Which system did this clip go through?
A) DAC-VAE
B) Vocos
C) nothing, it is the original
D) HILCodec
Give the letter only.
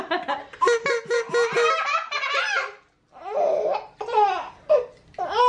C